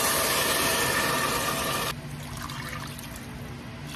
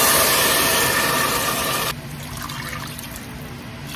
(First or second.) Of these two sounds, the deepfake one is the second